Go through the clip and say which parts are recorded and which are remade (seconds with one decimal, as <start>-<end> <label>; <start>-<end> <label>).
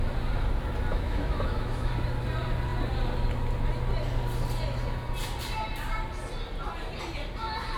0.0-0.9 recorded; 0.9-1.9 remade; 1.9-7.8 recorded